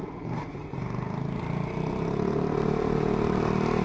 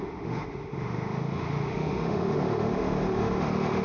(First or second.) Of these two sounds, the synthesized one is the second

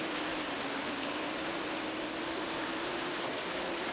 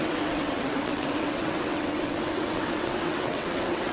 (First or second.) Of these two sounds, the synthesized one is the second